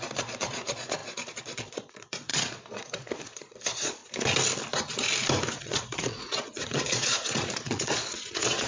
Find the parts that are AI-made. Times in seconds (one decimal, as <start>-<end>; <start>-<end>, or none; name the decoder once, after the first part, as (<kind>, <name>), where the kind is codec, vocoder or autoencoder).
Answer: 0.0-4.0 (vocoder, Vocos); 5.6-8.7